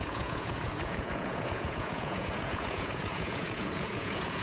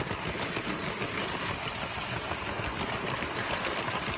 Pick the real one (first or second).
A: second